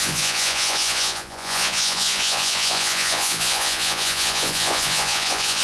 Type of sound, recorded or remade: remade